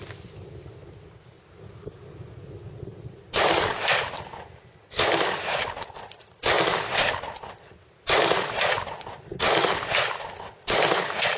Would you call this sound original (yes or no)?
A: yes